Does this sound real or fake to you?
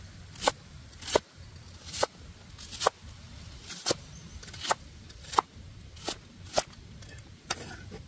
real